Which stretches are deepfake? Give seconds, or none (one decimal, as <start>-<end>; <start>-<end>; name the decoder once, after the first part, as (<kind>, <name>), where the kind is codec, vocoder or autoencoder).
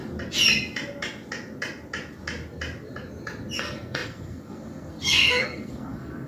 3.6-6.3 (codec, SNAC)